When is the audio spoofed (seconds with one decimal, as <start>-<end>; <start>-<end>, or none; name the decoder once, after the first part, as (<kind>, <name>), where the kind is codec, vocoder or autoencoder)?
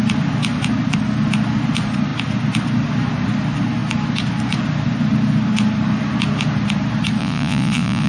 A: 7.2-8.1 (vocoder, Vocos)